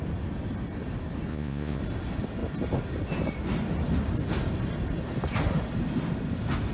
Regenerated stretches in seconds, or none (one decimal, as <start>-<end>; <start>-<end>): 1.3-1.8